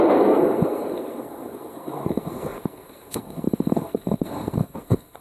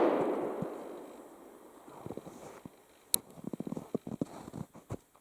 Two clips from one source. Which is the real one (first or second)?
second